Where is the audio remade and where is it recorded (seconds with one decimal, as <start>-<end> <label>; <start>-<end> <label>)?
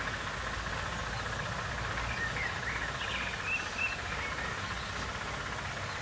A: 0.0-6.0 recorded